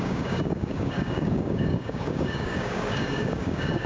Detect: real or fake fake